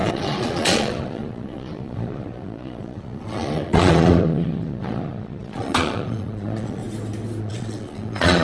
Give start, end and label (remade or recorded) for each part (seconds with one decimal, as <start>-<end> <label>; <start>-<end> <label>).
0.0-6.8 remade; 6.8-7.4 recorded; 7.4-8.4 remade